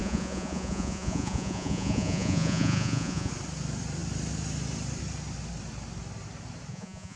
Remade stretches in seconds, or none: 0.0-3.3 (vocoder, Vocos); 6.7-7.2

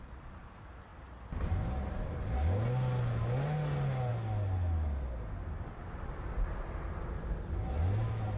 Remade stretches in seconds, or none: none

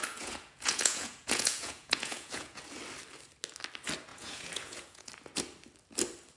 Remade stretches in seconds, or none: 0.0-2.6 (vocoder, Vocos); 4.1-5.1